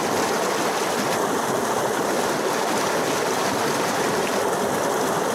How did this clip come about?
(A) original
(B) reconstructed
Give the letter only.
A